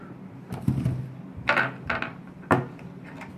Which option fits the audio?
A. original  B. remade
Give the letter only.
A